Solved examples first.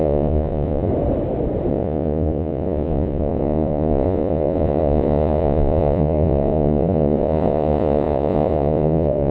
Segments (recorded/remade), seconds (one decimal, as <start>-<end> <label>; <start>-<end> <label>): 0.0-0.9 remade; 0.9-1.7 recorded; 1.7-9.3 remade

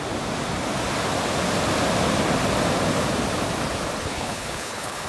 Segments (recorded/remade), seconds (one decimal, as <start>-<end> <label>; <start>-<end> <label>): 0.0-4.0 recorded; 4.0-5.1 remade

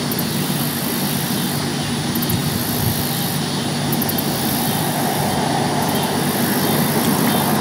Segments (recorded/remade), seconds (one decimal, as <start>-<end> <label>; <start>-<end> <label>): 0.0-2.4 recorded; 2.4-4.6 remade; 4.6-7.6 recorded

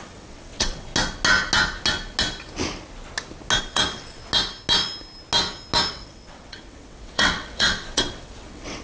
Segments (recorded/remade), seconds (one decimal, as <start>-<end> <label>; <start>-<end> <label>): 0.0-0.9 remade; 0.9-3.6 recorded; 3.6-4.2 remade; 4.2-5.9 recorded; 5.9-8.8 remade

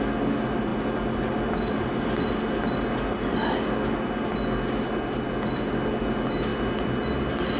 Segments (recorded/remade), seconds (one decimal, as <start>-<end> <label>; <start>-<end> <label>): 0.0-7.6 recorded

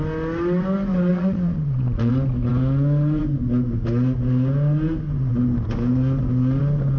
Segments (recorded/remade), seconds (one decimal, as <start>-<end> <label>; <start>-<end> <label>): 0.0-1.1 recorded; 1.1-2.1 remade; 2.1-7.0 recorded

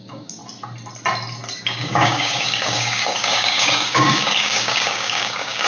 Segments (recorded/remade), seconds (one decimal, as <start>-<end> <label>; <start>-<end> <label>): 0.0-0.4 remade; 0.4-1.6 recorded; 1.6-5.7 remade